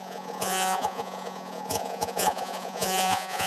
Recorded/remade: remade